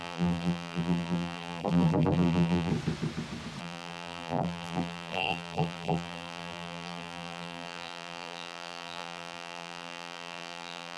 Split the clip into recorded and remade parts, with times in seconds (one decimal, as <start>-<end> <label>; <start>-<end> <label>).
0.0-2.7 remade; 2.7-3.6 recorded; 3.6-11.0 remade

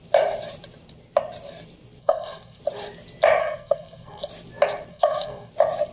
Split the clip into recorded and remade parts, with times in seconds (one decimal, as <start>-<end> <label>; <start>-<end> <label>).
0.0-2.0 recorded; 2.0-2.6 remade; 2.6-3.4 recorded; 3.4-4.3 remade; 4.3-4.9 recorded; 4.9-5.5 remade; 5.5-5.9 recorded